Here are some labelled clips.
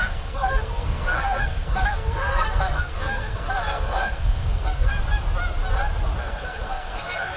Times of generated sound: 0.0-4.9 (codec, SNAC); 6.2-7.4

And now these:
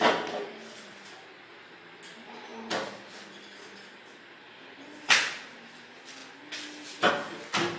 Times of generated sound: none

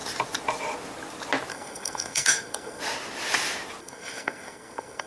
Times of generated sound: 1.5-2.8 (codec, SNAC); 3.8-5.1

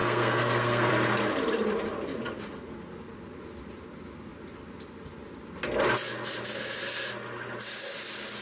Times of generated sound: 0.0-0.9 (codec, SNAC)

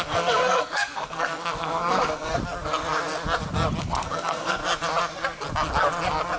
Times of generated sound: 0.0-2.3 (codec, SNAC); 3.8-4.6